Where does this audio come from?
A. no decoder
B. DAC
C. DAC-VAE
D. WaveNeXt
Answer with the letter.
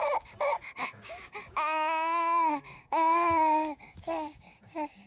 B